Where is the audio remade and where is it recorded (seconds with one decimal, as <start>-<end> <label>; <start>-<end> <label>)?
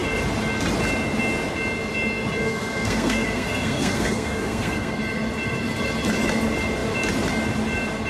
0.0-2.4 recorded; 2.4-5.0 remade; 5.0-8.1 recorded